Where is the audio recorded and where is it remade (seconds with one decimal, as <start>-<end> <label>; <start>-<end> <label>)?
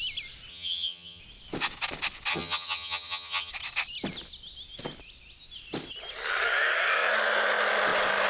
0.0-0.5 recorded; 0.5-1.2 remade; 1.2-2.3 recorded; 2.3-3.5 remade; 3.5-8.3 recorded